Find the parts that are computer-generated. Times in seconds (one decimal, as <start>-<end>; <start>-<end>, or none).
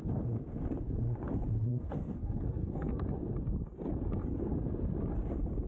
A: 1.7-3.0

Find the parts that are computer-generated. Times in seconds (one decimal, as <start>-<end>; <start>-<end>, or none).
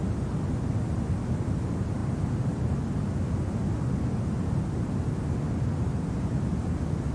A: none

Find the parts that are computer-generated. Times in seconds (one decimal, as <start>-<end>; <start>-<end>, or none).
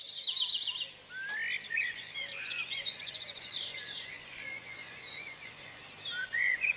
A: 1.7-5.8; 6.2-6.8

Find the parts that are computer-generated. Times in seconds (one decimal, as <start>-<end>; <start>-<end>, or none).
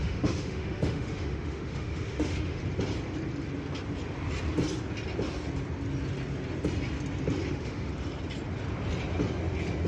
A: 0.0-2.6; 7.5-7.9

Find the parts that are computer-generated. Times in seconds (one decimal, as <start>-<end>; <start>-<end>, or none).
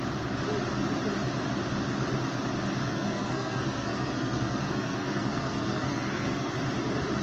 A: 2.8-6.5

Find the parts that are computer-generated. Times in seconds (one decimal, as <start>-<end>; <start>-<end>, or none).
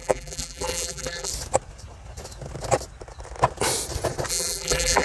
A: 0.0-1.3; 4.3-5.0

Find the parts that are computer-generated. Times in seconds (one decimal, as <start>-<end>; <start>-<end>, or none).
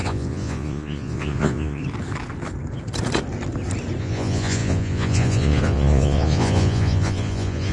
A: 0.0-1.8; 4.0-7.7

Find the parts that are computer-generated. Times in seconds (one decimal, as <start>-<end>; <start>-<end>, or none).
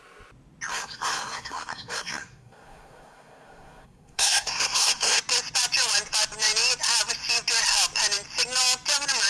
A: 0.7-5.2